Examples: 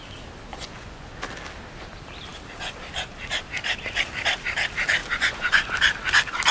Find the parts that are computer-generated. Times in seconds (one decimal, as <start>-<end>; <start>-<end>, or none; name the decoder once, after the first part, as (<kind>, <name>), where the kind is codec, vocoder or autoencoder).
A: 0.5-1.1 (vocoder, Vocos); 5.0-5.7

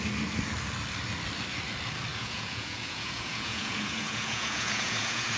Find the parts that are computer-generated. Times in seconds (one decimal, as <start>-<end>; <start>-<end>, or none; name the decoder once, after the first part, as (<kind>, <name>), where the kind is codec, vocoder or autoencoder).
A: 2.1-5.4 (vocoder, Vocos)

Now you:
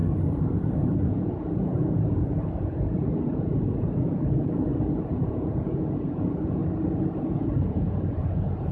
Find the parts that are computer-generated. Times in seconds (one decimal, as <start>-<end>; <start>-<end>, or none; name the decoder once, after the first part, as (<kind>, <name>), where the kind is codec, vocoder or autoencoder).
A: 1.0-6.6 (vocoder, Vocos); 7.2-8.7

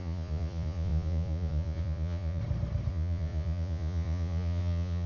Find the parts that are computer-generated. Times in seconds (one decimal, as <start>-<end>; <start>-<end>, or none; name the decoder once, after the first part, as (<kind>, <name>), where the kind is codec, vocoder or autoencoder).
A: 0.0-2.4 (vocoder, Vocos); 2.9-5.1

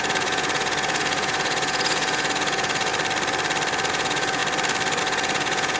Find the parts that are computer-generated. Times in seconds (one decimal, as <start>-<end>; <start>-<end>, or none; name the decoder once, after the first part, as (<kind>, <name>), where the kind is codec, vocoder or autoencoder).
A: 0.0-2.9 (vocoder, Vocos); 3.9-4.4; 5.0-5.8

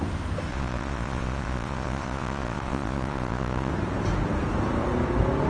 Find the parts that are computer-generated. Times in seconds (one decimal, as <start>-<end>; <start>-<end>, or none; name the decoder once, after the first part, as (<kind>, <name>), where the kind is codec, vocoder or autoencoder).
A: 0.5-3.7 (vocoder, Vocos)

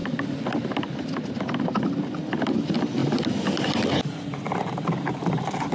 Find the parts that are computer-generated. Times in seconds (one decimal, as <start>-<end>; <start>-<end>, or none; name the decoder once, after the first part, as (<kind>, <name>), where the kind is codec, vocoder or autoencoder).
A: none

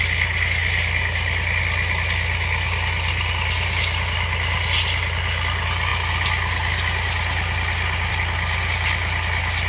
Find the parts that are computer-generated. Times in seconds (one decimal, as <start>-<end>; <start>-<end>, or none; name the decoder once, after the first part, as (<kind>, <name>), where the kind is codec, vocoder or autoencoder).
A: none